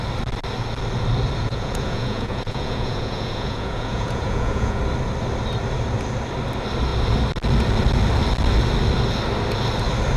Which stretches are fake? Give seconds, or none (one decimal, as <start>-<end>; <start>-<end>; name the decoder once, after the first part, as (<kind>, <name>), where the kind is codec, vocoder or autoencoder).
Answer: 1.4-4.8 (vocoder, Vocos)